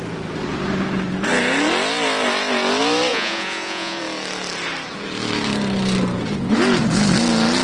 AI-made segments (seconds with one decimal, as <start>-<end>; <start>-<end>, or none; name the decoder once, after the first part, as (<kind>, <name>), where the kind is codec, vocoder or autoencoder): 3.1-4.0 (vocoder, Vocos)